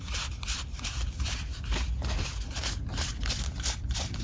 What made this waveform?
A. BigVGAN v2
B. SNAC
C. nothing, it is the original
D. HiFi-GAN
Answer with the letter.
C